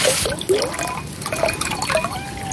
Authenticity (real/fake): real